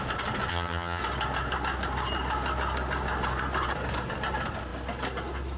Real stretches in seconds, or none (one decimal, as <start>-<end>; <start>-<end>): 0.0-0.5; 1.0-5.6